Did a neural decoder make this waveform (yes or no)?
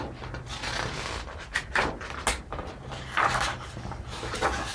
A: no